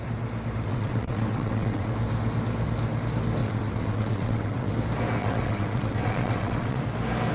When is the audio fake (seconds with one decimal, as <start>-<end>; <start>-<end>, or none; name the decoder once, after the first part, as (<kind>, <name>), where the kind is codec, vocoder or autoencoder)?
0.7-1.9 (vocoder, WaveNeXt); 3.4-4.7; 5.2-6.8